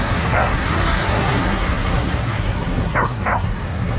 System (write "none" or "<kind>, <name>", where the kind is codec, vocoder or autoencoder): codec, SNAC